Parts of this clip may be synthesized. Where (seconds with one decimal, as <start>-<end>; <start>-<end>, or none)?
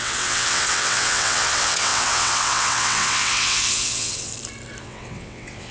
0.0-4.3; 4.8-5.7